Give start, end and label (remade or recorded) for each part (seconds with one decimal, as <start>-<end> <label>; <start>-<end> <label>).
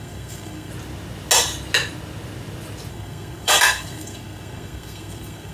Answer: 0.0-0.7 remade; 0.7-2.9 recorded; 2.9-5.5 remade